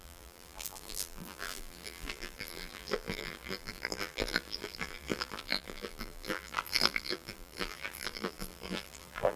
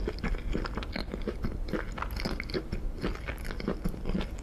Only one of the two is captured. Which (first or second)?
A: second